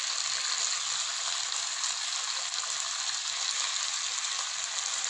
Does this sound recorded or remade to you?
recorded